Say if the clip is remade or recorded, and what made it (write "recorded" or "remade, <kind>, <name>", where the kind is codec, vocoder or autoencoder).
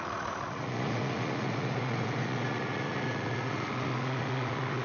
remade, vocoder, Vocos